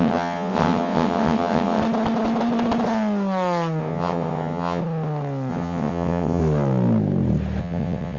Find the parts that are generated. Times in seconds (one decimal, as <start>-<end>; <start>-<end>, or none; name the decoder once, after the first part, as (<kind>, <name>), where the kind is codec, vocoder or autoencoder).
0.0-1.8 (vocoder, WaveNeXt); 3.8-4.8; 5.5-6.4; 7.6-8.2